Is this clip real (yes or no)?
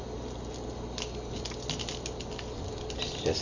yes